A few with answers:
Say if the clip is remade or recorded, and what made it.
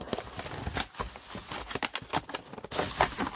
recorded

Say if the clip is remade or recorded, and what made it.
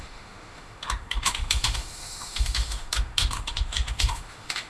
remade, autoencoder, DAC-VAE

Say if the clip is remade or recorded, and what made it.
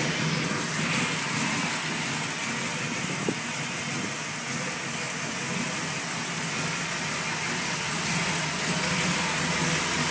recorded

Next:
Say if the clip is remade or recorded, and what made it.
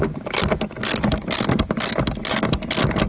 recorded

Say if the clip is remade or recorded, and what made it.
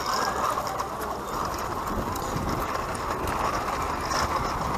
recorded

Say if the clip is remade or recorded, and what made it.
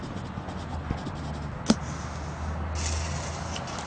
recorded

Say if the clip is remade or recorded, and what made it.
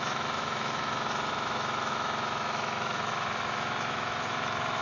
remade, autoencoder, DAC-VAE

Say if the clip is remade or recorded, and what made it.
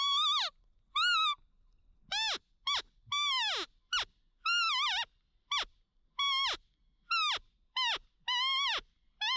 recorded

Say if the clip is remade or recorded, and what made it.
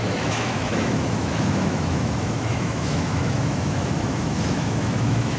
remade, autoencoder, DAC-VAE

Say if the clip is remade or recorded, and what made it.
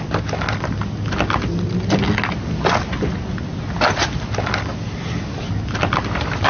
recorded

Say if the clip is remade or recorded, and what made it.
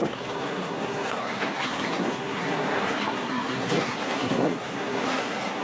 remade, codec, SNAC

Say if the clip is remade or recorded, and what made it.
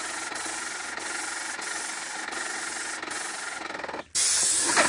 recorded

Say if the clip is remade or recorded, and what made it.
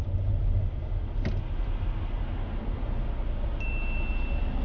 recorded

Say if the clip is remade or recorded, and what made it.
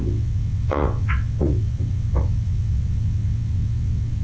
remade, vocoder, WaveNeXt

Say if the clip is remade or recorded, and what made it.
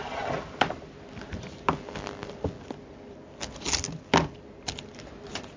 recorded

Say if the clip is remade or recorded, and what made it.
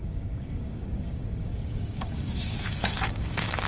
remade, codec, DAC